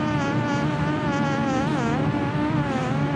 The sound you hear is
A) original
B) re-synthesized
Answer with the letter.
A